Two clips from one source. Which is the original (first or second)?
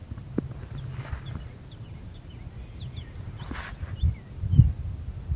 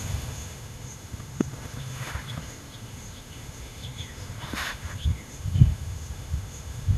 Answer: first